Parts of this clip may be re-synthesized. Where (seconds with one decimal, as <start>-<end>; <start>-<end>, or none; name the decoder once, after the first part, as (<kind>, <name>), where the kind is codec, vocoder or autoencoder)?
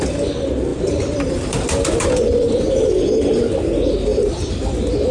0.7-2.9 (vocoder, BigVGAN v2); 4.1-5.1